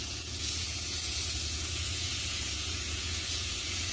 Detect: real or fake fake